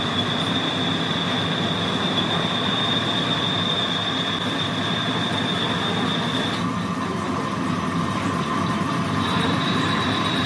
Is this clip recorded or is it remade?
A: recorded